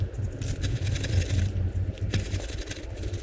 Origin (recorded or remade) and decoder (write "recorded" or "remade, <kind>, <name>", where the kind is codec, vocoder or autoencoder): recorded